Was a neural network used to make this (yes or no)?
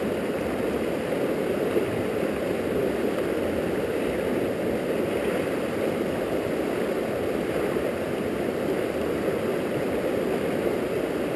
no